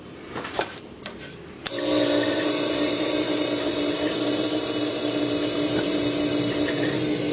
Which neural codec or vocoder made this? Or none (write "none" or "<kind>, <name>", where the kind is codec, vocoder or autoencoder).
vocoder, BigVGAN v2